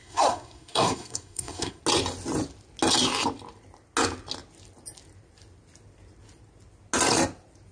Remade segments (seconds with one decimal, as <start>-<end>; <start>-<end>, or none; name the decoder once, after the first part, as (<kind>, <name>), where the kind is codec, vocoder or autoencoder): 0.0-1.8 (codec, SNAC)